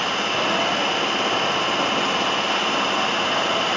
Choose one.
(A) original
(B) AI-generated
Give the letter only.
A